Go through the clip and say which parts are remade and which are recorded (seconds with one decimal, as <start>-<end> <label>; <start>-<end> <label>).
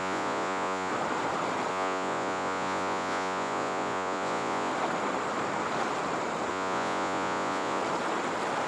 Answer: 0.0-0.9 remade; 0.9-1.7 recorded; 1.7-4.7 remade; 4.7-6.5 recorded; 6.5-7.8 remade; 7.8-8.7 recorded